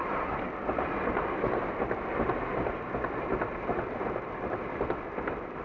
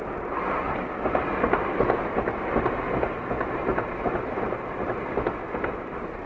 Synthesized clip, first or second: first